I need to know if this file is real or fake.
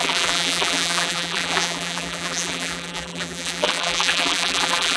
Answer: fake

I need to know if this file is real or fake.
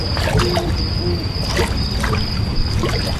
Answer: real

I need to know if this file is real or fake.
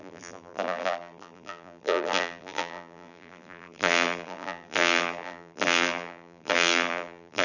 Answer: fake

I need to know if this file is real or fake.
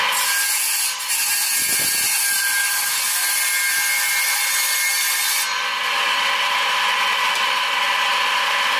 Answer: real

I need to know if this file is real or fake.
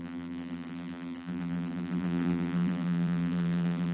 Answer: fake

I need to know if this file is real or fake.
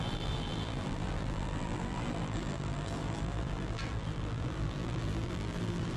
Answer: fake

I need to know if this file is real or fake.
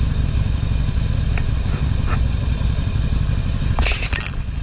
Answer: fake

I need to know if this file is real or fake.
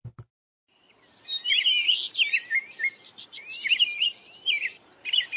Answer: fake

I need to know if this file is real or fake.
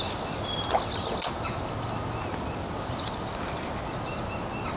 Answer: real